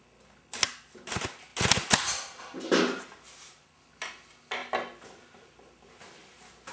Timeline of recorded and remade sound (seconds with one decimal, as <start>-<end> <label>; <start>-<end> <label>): 0.0-6.7 recorded